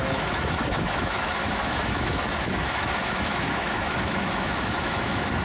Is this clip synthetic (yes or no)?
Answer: yes